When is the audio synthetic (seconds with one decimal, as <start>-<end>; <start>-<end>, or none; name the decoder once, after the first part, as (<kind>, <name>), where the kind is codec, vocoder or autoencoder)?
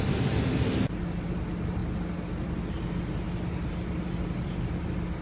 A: none